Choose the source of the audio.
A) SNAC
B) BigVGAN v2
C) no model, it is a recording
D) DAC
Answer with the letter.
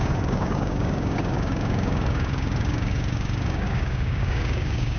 D